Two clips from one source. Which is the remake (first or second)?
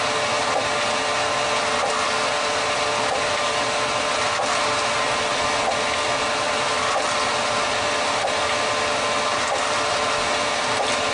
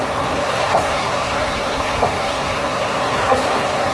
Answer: second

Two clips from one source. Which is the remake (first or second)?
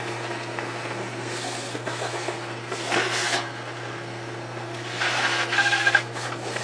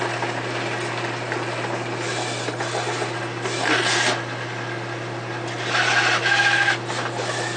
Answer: first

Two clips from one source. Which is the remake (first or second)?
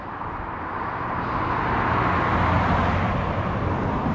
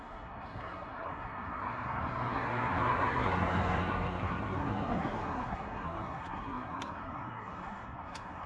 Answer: second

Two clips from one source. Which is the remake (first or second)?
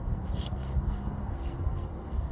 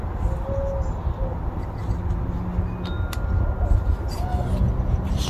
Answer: first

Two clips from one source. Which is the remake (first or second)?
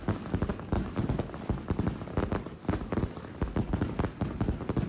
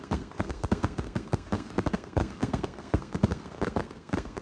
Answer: second